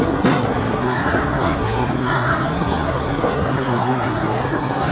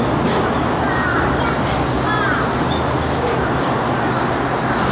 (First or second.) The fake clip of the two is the first